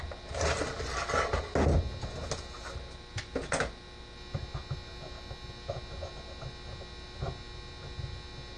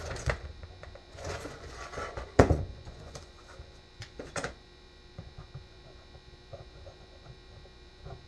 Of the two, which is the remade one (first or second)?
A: second